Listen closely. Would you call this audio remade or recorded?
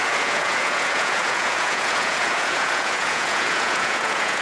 remade